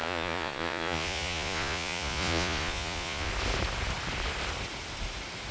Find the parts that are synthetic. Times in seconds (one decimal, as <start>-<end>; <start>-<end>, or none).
0.0-3.3